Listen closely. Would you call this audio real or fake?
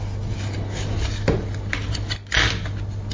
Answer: real